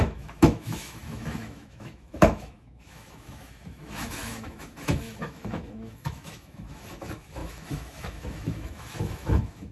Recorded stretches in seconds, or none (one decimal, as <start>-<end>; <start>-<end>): none

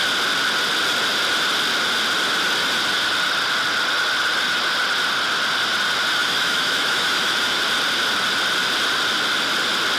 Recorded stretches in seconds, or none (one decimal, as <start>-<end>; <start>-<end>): 0.0-6.2; 7.6-10.0

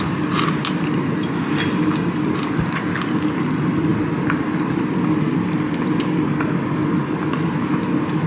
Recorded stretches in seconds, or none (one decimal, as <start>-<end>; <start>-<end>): 0.0-8.3

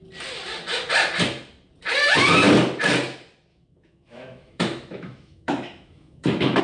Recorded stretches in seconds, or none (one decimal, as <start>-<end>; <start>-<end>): 0.0-3.5